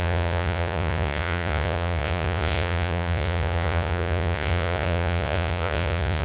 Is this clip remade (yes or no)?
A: yes